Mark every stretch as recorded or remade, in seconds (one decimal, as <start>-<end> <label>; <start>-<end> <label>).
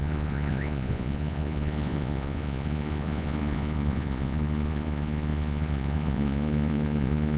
0.0-7.4 remade